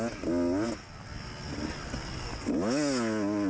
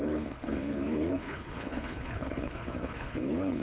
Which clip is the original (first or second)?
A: first